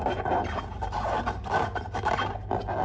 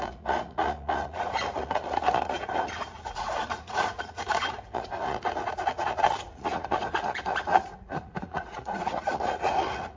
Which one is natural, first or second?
first